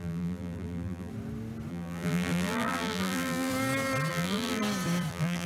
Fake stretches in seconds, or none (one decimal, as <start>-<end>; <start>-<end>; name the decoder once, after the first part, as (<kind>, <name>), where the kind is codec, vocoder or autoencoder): 0.0-1.1 (vocoder, BigVGAN v2); 1.7-3.5; 4.1-4.6; 5.1-5.5

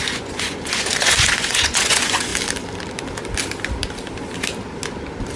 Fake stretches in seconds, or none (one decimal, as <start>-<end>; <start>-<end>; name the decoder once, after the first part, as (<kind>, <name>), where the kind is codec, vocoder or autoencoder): 0.0-2.3 (vocoder, Vocos)